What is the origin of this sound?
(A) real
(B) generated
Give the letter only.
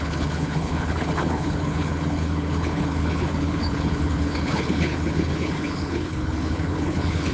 B